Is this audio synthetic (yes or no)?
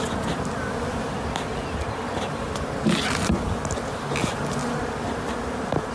no